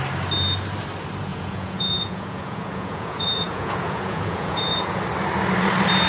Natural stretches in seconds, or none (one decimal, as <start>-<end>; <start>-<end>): 0.0-1.3; 5.0-6.1